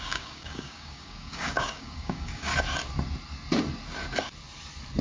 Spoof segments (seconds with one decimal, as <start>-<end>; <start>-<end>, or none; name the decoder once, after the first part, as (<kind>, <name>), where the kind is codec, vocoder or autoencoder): 0.0-2.5 (codec, DAC)